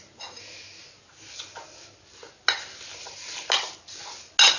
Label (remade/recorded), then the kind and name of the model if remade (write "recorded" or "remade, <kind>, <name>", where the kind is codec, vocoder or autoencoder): recorded